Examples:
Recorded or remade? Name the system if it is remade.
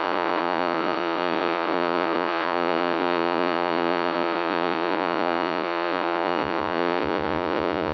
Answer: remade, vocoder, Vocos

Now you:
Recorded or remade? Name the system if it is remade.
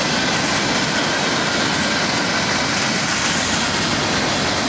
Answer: recorded